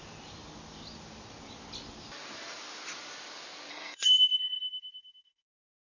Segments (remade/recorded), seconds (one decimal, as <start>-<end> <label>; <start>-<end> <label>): 0.0-3.7 recorded; 3.7-5.5 remade; 5.5-5.9 recorded